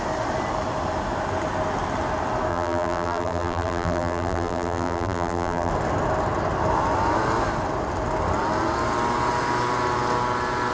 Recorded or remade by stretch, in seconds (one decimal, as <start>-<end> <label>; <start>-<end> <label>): 0.0-2.5 recorded; 2.5-5.7 remade; 5.7-10.7 recorded